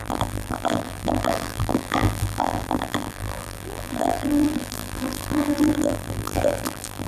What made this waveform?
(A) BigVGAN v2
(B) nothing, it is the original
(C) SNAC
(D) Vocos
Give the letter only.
A